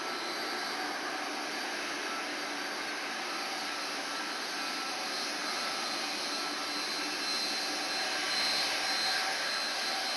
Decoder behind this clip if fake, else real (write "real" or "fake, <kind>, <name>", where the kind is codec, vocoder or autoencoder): real